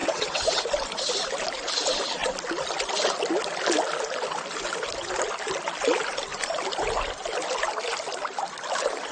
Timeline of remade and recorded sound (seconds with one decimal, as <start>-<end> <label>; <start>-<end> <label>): 0.0-0.6 remade; 0.6-9.1 recorded